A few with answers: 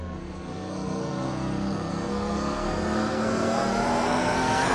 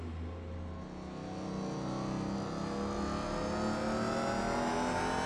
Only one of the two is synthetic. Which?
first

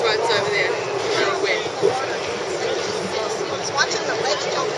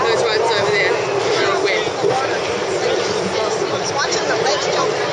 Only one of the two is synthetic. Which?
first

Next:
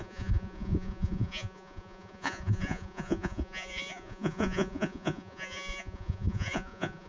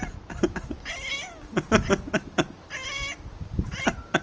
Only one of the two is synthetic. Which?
first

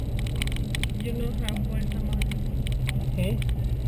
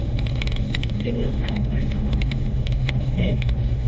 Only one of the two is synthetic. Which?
second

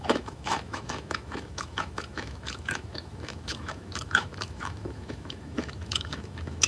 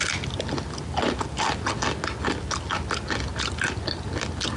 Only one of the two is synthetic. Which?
first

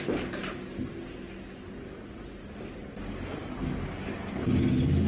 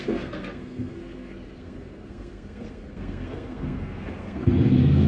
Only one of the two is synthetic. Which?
second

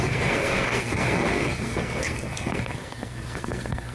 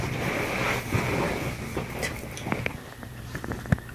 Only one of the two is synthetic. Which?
first